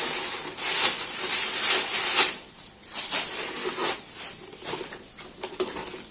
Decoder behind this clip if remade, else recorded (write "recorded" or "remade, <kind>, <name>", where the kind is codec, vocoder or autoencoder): recorded